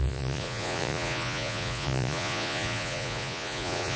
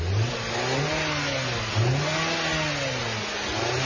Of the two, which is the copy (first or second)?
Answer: first